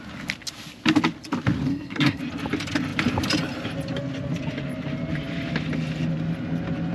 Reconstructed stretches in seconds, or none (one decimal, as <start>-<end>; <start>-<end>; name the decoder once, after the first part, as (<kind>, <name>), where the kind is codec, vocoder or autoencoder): 1.7-2.2 (codec, SNAC)